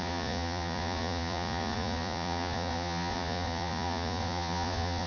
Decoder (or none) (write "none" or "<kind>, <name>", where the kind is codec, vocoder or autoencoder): vocoder, Vocos